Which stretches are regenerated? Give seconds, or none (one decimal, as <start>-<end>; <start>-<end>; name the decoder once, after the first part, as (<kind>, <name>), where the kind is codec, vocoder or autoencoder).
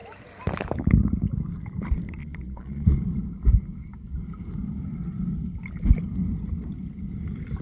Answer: 2.2-3.0 (vocoder, Vocos)